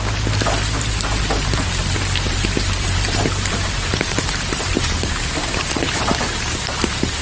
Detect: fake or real fake